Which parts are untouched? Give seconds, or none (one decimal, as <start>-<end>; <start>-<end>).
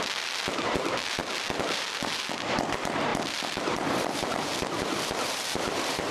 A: 0.0-3.1